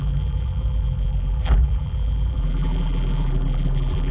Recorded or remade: remade